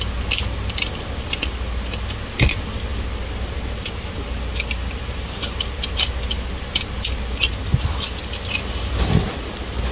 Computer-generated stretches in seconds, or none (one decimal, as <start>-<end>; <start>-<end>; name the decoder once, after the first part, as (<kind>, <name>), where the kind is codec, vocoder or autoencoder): none

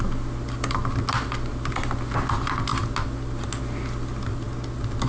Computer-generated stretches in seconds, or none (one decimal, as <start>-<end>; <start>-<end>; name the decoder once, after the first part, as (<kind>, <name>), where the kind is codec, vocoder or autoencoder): none

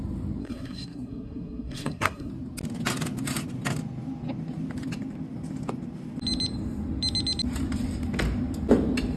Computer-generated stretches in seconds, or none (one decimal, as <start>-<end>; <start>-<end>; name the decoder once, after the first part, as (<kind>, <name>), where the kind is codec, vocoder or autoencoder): 0.4-2.3 (codec, SNAC)

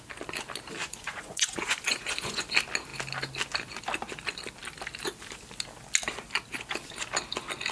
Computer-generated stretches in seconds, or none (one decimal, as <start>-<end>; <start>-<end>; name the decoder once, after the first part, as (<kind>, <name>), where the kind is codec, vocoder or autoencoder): 0.8-2.4 (vocoder, Vocos)

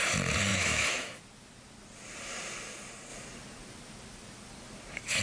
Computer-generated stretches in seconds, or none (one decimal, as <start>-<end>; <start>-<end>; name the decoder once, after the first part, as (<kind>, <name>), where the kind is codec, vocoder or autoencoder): 0.5-1.2 (autoencoder, DAC-VAE)

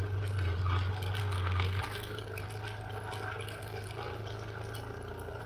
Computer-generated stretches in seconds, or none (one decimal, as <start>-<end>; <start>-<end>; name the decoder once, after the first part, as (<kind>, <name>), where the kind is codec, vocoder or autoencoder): 1.2-1.8 (codec, SNAC)

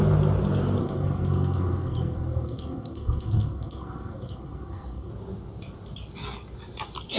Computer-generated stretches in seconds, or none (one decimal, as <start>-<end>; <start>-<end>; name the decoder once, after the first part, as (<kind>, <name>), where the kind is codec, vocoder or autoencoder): 0.8-5.1 (codec, SNAC)